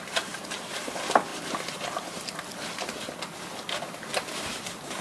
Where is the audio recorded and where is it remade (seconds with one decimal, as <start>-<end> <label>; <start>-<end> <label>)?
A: 0.0-1.3 remade; 1.3-4.3 recorded; 4.3-5.0 remade